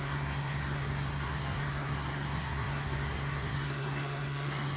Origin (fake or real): fake